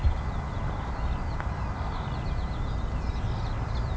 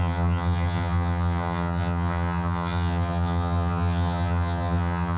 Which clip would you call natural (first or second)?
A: first